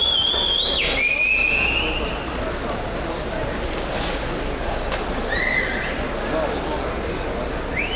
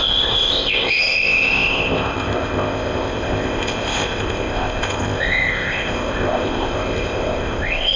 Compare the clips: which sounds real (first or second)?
first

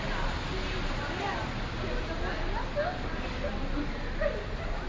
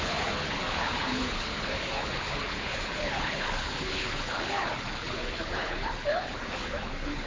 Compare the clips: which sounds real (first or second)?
first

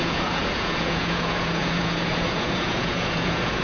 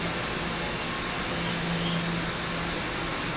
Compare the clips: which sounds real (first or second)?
second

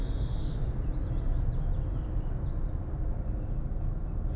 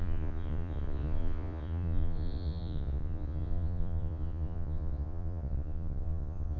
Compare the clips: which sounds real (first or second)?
first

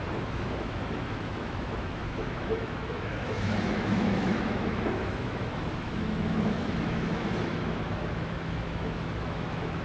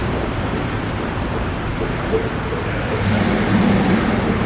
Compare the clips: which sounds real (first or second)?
second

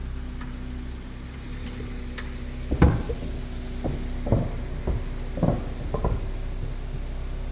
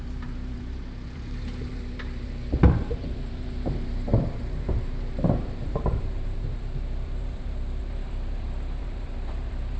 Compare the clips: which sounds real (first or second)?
first